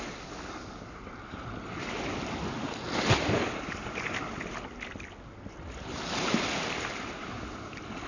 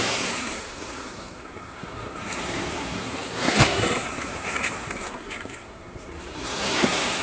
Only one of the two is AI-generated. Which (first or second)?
second